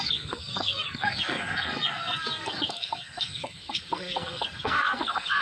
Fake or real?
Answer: fake